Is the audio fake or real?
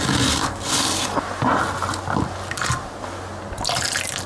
real